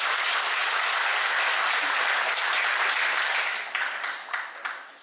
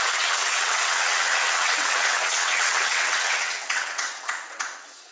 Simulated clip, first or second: second